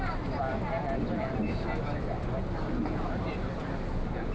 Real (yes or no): yes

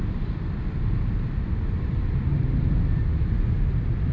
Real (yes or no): yes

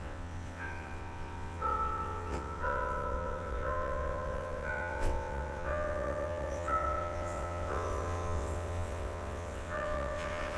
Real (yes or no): no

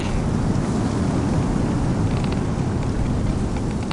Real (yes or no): yes